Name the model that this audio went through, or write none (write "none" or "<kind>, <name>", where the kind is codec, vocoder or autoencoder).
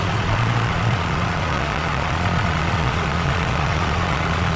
vocoder, Vocos